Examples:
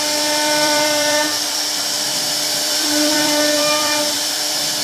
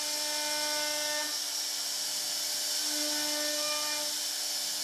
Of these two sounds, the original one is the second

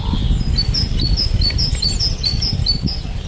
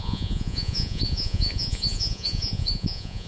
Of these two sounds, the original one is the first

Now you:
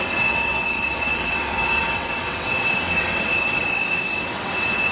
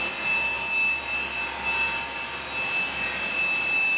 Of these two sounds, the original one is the second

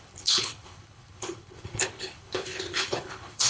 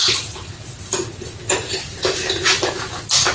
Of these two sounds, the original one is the second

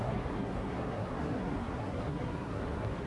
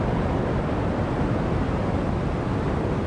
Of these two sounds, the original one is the second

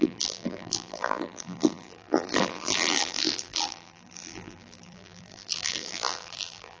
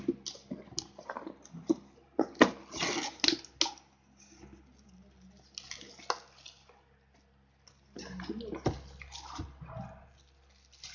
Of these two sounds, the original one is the second